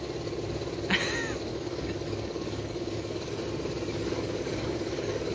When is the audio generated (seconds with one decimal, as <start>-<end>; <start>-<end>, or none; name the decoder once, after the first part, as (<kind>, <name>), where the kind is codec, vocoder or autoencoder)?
1.5-3.4 (codec, DAC); 3.9-5.3